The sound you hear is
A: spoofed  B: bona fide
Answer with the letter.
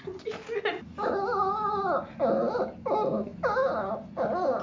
B